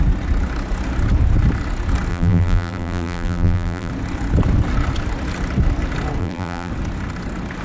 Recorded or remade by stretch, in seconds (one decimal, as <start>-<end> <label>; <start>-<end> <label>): 0.0-2.1 recorded; 2.1-3.9 remade; 3.9-6.2 recorded; 6.2-6.7 remade; 6.7-7.6 recorded